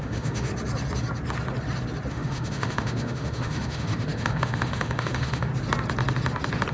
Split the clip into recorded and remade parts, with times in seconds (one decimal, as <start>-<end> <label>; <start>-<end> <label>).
0.0-0.5 remade; 0.5-2.1 recorded; 2.1-5.5 remade; 5.5-6.7 recorded